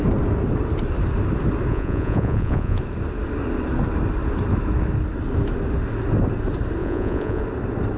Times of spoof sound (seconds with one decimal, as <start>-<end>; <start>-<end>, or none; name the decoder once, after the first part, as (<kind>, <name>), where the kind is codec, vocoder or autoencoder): 1.7-2.8 (vocoder, Vocos); 6.8-7.4